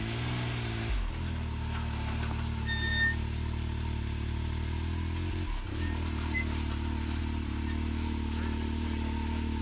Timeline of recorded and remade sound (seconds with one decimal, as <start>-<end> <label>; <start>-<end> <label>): 0.0-9.6 recorded